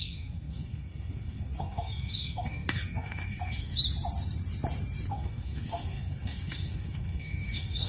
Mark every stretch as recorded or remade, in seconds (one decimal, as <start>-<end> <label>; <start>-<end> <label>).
0.0-3.8 remade; 3.8-5.1 recorded; 5.1-7.9 remade